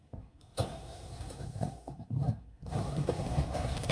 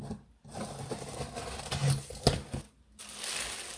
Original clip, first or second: second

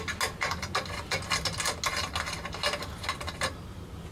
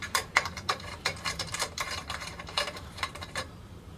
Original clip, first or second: first